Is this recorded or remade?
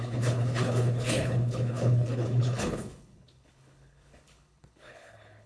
remade